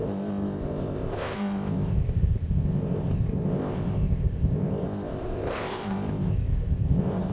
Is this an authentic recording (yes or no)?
no